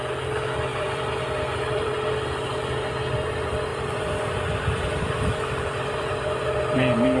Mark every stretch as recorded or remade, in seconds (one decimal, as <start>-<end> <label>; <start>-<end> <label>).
0.0-0.7 recorded; 0.7-1.9 remade; 1.9-3.7 recorded; 3.7-6.1 remade; 6.1-7.2 recorded